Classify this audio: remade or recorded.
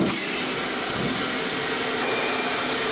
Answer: recorded